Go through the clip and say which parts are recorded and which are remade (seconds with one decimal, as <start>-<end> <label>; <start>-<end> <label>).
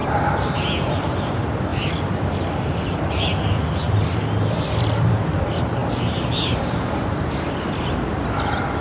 0.0-5.8 remade; 5.8-7.6 recorded; 7.6-8.8 remade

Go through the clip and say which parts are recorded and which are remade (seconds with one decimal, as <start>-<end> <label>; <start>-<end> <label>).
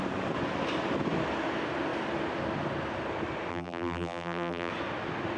0.0-3.5 recorded; 3.5-4.7 remade; 4.7-5.4 recorded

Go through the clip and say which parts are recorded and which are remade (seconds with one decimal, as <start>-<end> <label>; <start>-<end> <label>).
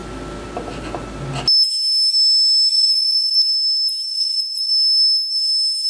0.0-2.7 recorded; 2.7-3.3 remade; 3.3-4.1 recorded; 4.1-4.7 remade; 4.7-5.9 recorded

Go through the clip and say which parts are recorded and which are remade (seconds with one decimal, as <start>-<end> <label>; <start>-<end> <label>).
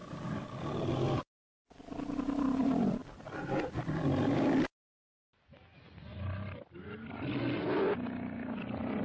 0.0-3.0 remade; 3.0-5.6 recorded; 5.6-6.1 remade; 6.1-9.0 recorded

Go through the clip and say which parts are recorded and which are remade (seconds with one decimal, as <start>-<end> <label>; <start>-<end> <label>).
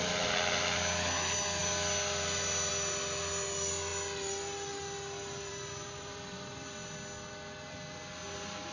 0.0-8.7 recorded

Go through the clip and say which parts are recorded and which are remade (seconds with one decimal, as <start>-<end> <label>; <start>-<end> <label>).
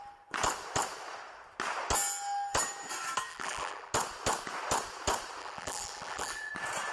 0.0-3.3 recorded; 3.3-3.9 remade; 3.9-5.4 recorded; 5.4-6.5 remade; 6.5-6.9 recorded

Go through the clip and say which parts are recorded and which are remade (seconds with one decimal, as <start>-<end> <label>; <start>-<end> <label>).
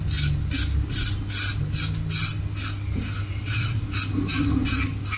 0.0-5.2 recorded